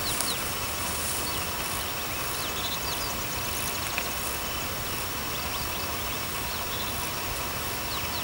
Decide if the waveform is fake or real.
real